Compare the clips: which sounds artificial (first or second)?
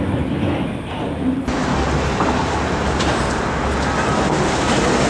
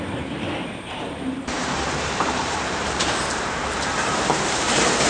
second